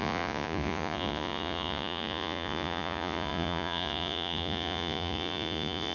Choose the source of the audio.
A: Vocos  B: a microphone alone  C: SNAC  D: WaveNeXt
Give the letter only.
A